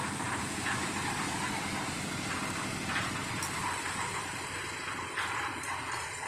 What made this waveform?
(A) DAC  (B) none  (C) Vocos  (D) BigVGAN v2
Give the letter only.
D